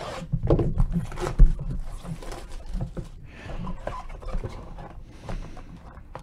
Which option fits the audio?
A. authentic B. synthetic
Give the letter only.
B